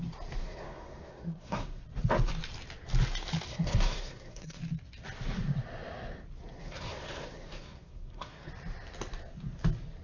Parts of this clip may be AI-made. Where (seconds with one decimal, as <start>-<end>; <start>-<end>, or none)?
0.4-1.8; 3.5-4.6; 6.6-8.5